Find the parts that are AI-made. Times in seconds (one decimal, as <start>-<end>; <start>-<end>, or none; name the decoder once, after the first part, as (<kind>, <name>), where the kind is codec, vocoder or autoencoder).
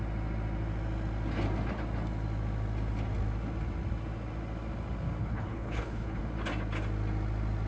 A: 5.2-6.2 (codec, HILCodec)